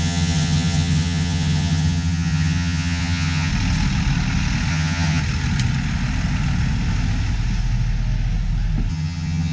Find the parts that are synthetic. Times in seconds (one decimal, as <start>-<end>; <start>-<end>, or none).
0.0-3.5; 4.7-5.2; 8.9-9.5